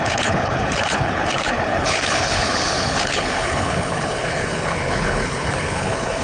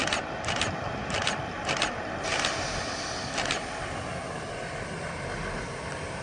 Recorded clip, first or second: second